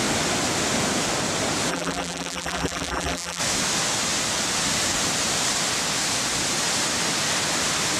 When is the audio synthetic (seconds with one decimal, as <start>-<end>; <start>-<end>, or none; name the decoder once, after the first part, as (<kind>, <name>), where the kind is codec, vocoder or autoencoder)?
1.7-3.4 (vocoder, BigVGAN v2)